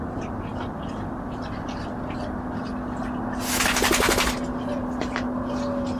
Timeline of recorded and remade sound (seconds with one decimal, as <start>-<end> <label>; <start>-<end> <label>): 0.0-6.0 recorded

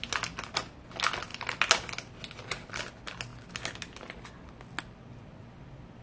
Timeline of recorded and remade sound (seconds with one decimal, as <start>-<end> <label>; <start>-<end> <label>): 0.0-6.0 recorded

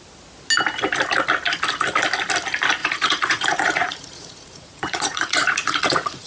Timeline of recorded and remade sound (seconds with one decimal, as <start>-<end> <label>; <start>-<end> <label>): 0.0-2.8 recorded; 2.8-6.3 remade